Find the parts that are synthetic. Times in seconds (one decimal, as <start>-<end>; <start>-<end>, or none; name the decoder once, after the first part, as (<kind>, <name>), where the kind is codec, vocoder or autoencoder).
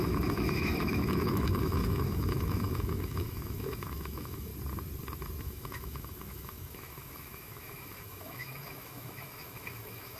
0.0-4.5 (autoencoder, DAC-VAE); 5.4-10.2